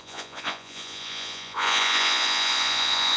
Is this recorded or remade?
remade